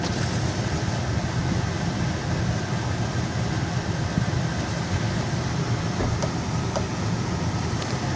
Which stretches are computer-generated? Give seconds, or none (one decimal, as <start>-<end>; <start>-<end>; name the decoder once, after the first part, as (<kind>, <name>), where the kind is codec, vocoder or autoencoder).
6.9-7.5 (vocoder, Vocos)